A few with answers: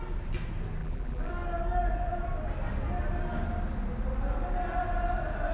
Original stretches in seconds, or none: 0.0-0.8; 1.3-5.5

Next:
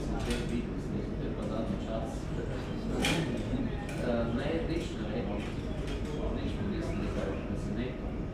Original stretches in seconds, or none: 0.0-3.0; 3.6-8.3

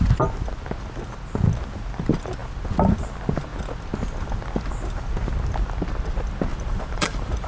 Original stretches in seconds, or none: 0.0-6.5